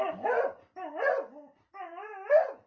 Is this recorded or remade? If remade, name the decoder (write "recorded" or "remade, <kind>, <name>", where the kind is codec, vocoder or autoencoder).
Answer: recorded